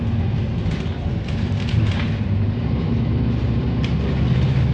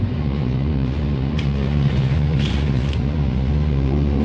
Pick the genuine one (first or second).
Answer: first